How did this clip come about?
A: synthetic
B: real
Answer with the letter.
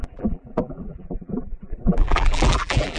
A